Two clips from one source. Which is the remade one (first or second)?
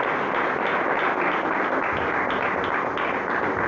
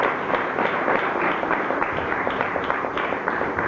second